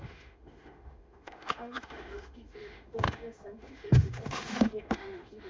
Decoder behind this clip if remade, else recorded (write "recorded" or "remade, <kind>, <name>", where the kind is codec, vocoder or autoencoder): remade, autoencoder, DAC-VAE